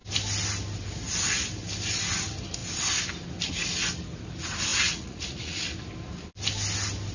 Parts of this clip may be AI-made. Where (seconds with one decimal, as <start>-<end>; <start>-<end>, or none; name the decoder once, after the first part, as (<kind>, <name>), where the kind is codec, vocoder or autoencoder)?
4.7-5.6 (vocoder, Vocos)